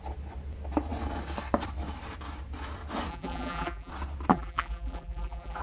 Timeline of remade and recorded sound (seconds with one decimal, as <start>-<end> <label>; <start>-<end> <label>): 0.0-3.1 recorded; 3.1-3.9 remade; 3.9-4.3 recorded; 4.3-5.6 remade